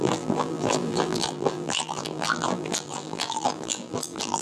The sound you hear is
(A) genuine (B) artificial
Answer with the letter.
B